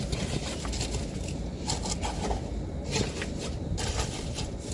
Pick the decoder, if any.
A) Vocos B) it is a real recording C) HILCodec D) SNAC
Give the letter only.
B